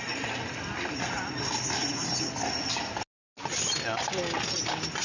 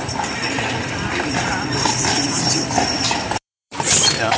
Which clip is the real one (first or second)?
first